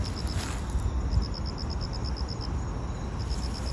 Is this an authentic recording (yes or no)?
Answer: yes